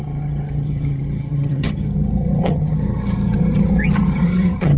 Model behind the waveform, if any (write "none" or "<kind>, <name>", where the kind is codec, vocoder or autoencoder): vocoder, HiFi-GAN